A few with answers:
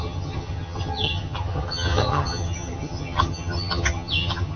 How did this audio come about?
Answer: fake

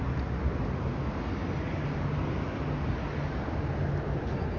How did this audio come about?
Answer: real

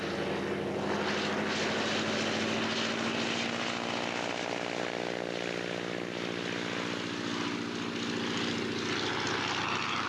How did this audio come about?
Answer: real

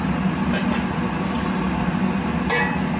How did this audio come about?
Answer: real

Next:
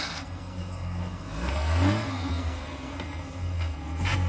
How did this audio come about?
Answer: fake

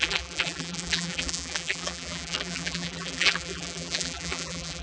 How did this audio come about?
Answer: fake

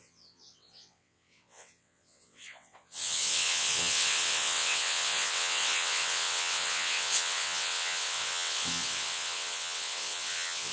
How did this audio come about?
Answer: fake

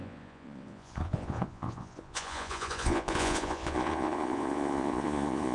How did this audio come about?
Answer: fake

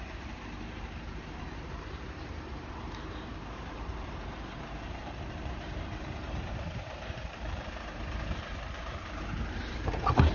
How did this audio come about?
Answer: fake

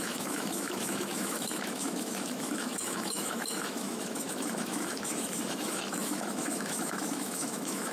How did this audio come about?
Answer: fake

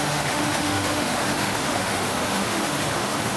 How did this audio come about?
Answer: fake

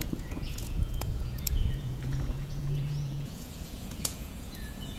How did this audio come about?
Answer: fake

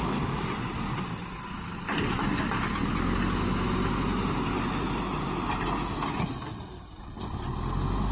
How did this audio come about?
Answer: real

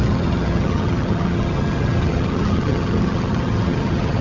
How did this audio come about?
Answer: fake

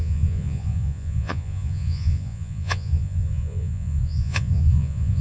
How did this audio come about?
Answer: fake